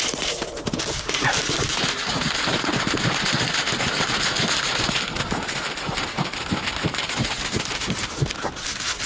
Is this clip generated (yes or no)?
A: no